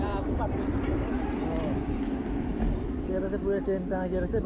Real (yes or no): yes